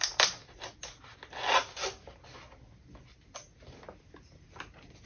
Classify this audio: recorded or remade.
recorded